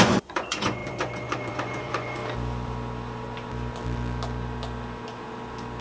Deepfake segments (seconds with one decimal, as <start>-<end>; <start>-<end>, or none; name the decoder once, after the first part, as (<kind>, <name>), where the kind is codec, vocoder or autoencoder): 0.0-2.2 (vocoder, Vocos)